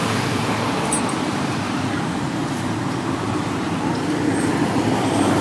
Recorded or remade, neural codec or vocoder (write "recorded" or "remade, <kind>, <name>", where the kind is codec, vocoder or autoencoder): remade, vocoder, BigVGAN v2